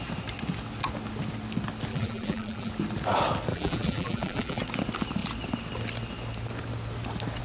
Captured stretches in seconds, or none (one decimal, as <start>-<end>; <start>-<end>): 0.0-1.9; 2.7-3.5; 4.6-7.4